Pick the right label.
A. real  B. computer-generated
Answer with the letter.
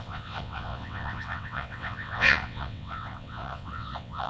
B